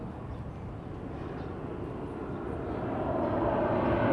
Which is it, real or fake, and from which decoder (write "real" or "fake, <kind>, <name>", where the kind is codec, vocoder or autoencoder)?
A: real